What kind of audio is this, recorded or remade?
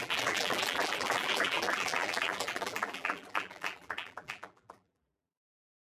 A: remade